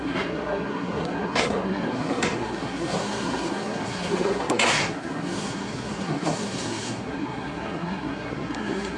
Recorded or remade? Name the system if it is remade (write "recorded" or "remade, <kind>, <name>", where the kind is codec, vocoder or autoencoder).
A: remade, codec, SNAC